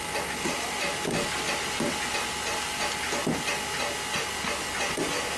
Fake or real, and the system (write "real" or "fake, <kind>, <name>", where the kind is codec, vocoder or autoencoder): real